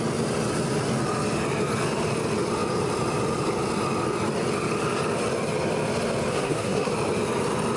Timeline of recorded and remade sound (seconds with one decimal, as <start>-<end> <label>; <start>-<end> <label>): 0.0-6.3 recorded; 6.3-6.9 remade; 6.9-7.8 recorded